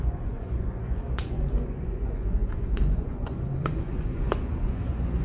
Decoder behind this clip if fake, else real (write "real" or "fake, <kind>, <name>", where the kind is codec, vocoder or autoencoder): fake, vocoder, Vocos